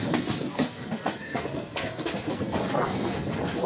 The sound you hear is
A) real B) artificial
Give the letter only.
B